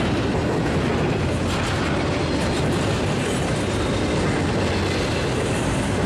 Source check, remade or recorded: recorded